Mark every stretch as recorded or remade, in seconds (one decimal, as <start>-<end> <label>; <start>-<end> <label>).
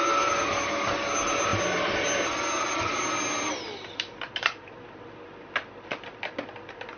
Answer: 0.0-7.0 recorded